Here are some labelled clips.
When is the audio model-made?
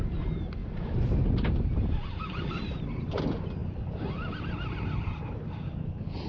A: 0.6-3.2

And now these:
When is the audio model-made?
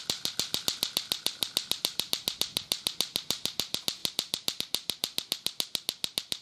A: none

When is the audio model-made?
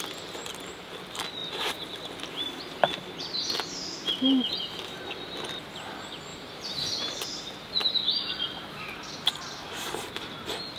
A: 6.3-7.4